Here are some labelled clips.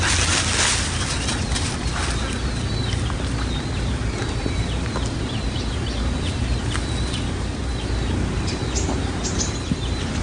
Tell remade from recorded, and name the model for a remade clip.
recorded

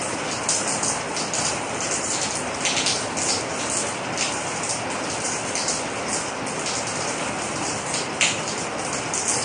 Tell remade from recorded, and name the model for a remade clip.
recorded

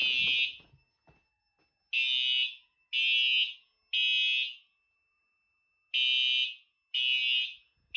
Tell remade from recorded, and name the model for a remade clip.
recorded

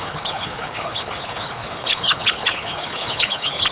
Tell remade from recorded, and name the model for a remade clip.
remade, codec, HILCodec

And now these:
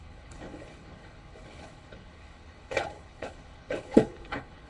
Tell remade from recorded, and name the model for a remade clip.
remade, codec, HILCodec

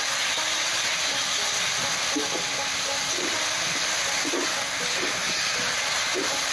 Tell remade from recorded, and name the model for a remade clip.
recorded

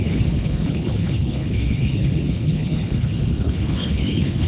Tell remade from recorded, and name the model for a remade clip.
remade, codec, HILCodec